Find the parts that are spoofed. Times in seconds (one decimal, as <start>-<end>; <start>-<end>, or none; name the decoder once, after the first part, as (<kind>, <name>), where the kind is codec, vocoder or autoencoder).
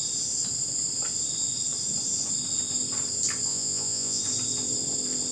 3.5-4.2 (vocoder, Vocos)